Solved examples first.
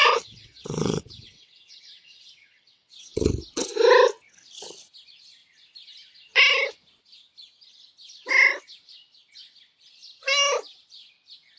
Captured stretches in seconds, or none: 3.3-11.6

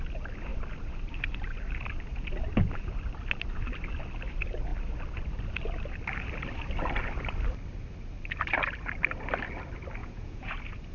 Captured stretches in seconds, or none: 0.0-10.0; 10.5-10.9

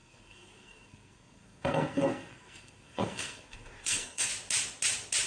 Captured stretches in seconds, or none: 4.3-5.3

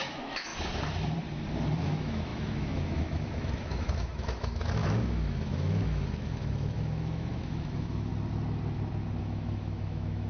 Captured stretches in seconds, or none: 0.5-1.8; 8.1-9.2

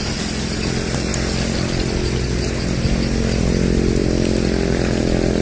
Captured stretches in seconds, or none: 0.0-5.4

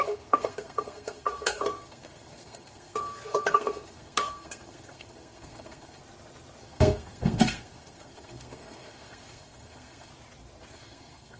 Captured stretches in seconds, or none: 6.0-6.6; 10.1-10.7

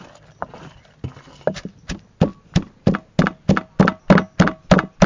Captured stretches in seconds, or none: 0.0-5.1